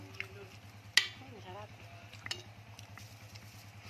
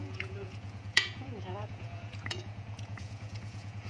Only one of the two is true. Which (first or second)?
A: first